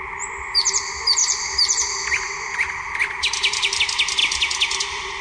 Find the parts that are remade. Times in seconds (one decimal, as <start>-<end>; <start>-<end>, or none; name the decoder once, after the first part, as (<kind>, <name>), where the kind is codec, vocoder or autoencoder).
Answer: 1.2-3.8 (vocoder, BigVGAN v2); 4.2-5.2